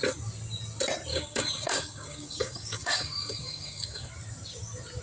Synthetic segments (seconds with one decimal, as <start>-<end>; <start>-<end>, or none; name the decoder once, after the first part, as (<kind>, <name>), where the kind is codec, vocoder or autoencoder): 1.1-4.1 (codec, DAC)